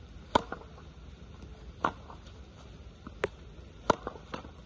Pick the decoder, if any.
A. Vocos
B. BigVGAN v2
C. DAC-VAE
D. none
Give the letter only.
D